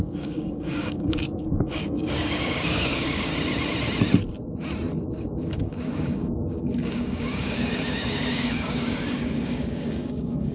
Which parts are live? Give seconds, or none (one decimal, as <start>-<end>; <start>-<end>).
3.3-5.0